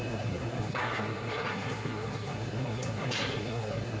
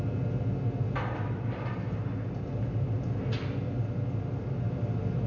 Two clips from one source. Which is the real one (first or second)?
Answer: second